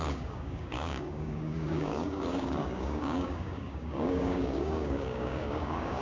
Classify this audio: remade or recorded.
remade